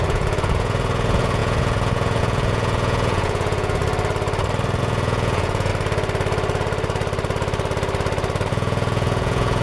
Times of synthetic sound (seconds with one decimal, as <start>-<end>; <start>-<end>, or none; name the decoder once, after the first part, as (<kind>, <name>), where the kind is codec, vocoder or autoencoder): 0.0-3.8 (vocoder, Vocos); 4.8-5.7; 8.5-9.6